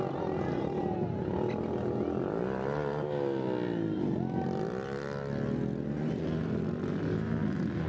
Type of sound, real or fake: real